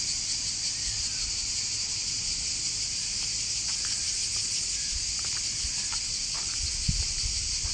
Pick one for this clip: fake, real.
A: real